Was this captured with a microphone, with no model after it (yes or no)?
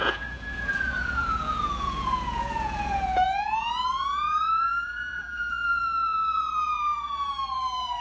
no